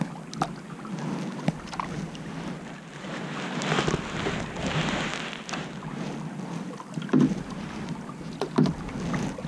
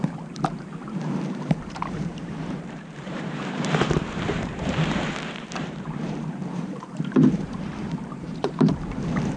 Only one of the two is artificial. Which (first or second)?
second